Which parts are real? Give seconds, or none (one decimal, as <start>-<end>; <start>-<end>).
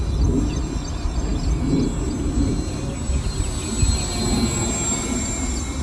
0.0-5.8